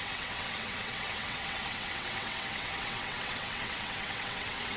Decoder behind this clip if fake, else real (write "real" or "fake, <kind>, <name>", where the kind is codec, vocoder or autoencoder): fake, vocoder, WaveNeXt